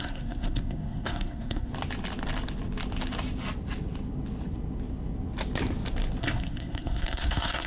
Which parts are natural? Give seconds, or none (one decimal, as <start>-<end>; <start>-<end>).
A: 1.7-6.2